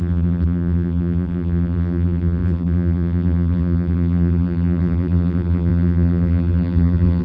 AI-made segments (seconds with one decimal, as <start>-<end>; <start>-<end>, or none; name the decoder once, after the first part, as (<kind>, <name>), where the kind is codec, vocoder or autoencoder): 0.0-7.2 (vocoder, BigVGAN v2)